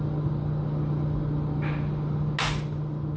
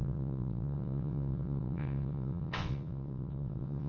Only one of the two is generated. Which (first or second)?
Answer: second